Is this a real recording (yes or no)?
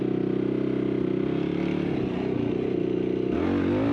yes